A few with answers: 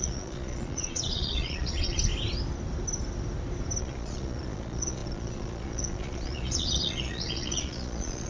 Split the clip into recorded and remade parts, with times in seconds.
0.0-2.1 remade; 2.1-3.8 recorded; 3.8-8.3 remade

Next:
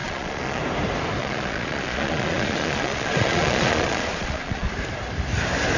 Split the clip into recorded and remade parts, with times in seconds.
0.0-0.6 remade; 0.6-1.2 recorded; 1.2-4.7 remade; 4.7-5.8 recorded